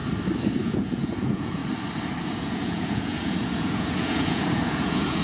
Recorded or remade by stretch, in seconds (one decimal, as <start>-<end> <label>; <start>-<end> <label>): 0.0-0.6 recorded; 0.6-1.6 remade; 1.6-2.2 recorded; 2.2-5.2 remade